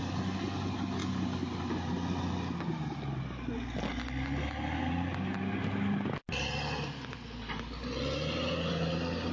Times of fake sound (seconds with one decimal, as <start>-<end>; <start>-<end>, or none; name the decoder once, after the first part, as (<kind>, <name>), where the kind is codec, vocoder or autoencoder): none